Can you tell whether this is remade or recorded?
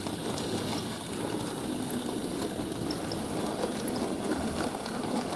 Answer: recorded